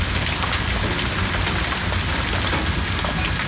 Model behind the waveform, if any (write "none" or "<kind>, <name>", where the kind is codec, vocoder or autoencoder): none